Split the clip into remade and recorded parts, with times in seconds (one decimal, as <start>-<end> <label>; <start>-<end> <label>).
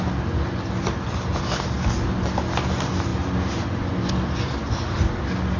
0.0-5.6 recorded